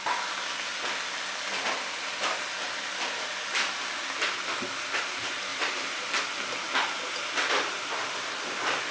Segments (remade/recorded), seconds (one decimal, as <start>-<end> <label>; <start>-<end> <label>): 0.0-5.5 recorded; 5.5-6.2 remade; 6.2-8.9 recorded